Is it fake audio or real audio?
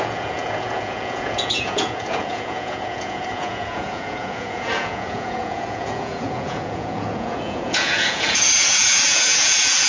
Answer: fake